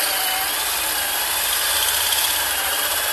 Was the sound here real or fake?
real